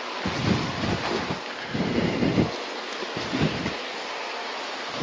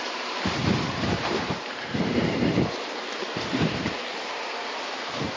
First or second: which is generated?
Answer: second